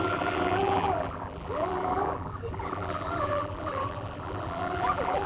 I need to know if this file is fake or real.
fake